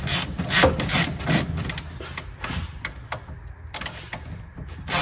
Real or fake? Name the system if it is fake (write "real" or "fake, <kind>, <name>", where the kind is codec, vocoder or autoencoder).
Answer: real